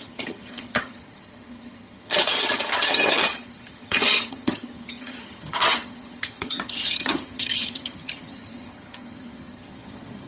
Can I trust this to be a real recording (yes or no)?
no